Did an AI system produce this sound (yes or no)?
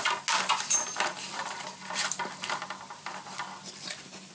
no